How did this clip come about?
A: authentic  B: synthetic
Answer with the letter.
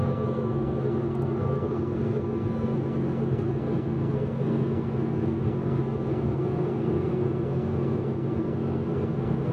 B